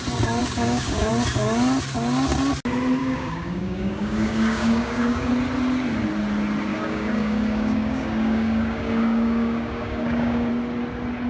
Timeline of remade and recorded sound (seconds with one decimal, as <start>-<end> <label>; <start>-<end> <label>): 0.0-0.4 recorded; 0.4-1.1 remade; 1.1-3.0 recorded; 3.0-5.3 remade; 5.3-6.7 recorded; 6.7-10.5 remade; 10.5-11.3 recorded